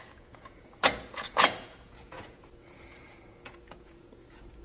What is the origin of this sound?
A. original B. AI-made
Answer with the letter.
B